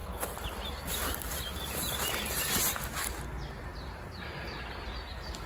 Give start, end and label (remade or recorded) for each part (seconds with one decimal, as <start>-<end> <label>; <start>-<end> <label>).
0.0-3.7 recorded; 3.7-4.2 remade; 4.2-5.5 recorded